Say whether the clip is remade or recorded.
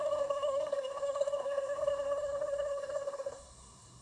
remade